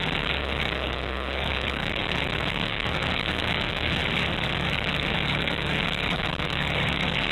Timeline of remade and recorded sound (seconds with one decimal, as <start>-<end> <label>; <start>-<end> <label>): 0.0-4.0 remade; 4.0-4.5 recorded; 4.5-7.3 remade